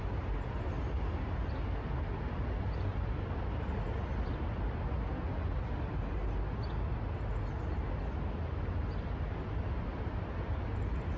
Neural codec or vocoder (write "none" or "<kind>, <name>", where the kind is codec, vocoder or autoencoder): none